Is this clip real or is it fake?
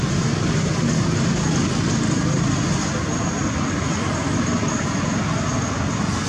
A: real